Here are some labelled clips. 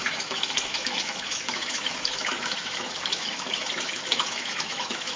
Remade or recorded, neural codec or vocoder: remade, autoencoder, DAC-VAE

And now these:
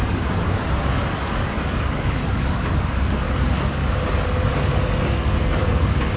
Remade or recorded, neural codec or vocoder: remade, codec, DAC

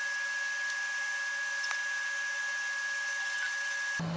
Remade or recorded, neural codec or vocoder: recorded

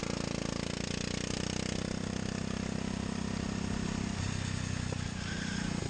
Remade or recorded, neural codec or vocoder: recorded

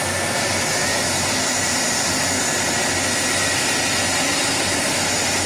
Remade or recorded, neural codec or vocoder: recorded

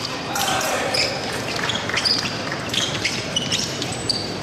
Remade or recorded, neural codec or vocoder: remade, vocoder, BigVGAN v2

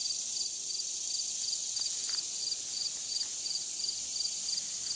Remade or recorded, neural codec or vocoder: recorded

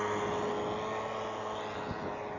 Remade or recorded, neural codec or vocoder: recorded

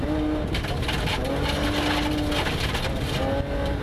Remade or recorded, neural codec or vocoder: recorded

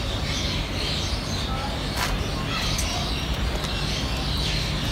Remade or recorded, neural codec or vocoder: recorded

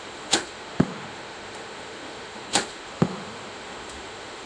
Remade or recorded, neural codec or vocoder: remade, autoencoder, DAC-VAE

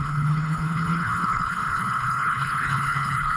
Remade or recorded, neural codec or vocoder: remade, codec, HILCodec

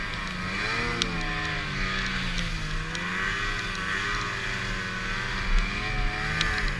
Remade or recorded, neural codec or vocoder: recorded